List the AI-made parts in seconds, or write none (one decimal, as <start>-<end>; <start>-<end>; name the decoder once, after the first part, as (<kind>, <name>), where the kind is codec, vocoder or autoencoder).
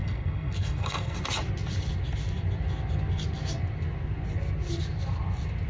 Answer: 0.0-1.2 (codec, SNAC)